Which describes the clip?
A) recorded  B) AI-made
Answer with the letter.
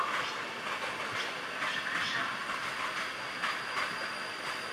A